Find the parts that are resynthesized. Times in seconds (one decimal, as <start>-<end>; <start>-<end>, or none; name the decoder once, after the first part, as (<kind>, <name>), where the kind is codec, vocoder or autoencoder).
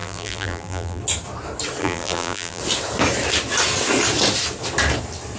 0.0-1.0 (vocoder, BigVGAN v2); 1.8-2.6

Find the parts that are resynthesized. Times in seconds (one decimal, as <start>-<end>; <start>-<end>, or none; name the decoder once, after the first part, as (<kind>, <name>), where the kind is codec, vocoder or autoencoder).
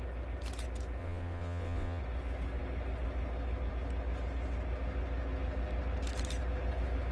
1.0-2.0 (vocoder, WaveNeXt)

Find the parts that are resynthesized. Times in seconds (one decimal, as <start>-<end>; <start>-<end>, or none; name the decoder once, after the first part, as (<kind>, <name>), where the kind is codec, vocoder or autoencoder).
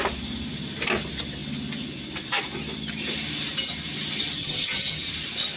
4.4-5.1 (vocoder, HiFi-GAN)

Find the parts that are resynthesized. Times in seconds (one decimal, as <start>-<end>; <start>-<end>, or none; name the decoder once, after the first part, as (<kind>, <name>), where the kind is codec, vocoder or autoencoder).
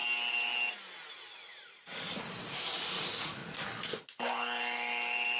2.8-3.4 (vocoder, Vocos)